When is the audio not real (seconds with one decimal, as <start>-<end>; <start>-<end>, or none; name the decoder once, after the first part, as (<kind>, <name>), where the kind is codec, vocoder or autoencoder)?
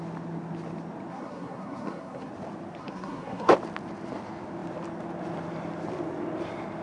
1.1-2.3 (codec, SNAC); 2.8-3.5